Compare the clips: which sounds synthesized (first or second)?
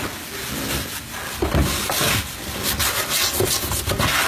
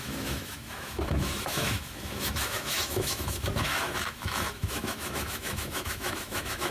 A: second